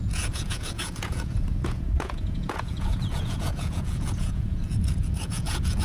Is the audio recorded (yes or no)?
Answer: no